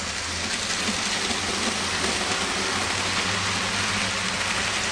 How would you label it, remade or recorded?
recorded